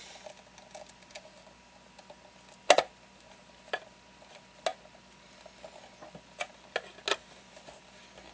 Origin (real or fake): real